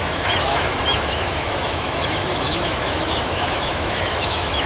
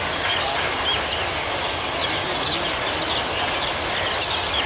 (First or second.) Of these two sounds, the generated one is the first